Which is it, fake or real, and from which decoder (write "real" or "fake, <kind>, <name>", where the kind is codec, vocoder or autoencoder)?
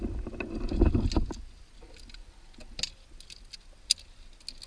real